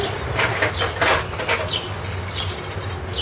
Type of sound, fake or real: real